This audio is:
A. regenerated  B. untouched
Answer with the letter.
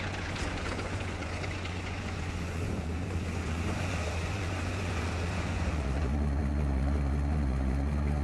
A